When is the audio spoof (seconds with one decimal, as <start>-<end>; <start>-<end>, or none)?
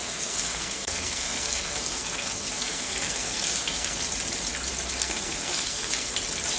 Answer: 0.0-4.0; 5.0-6.1